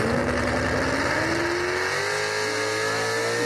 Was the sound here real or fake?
real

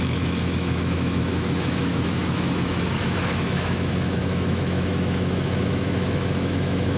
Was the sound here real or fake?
fake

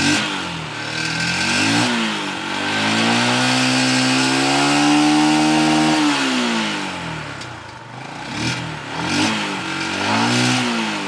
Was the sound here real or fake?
real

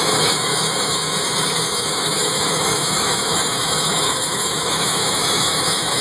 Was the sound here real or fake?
fake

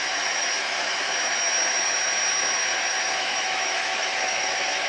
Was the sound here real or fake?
fake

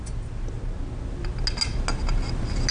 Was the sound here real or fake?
real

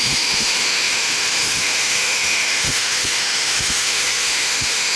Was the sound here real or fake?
fake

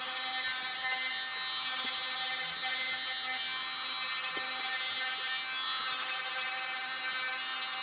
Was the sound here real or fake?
real